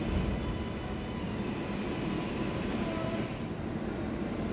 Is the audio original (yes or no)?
yes